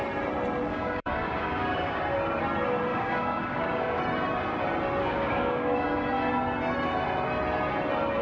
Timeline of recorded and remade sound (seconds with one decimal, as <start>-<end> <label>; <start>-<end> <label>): 0.0-0.7 recorded; 0.7-2.0 remade; 2.0-2.9 recorded; 2.9-4.0 remade; 4.0-5.0 recorded; 5.0-6.0 remade; 6.0-8.2 recorded